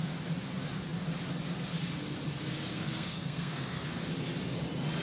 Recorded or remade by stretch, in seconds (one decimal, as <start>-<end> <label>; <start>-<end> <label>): 0.0-2.7 recorded; 2.7-3.9 remade; 3.9-5.0 recorded